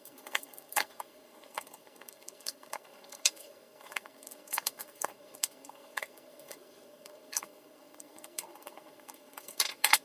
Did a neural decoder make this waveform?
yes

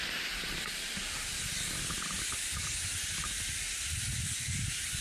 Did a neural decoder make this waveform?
no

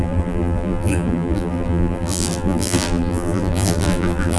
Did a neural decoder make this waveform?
yes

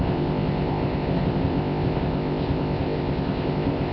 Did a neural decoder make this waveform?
yes